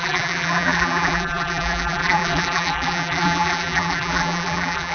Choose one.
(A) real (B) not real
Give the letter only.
B